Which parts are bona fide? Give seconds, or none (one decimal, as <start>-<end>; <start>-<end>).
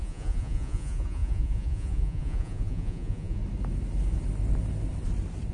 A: 3.4-5.5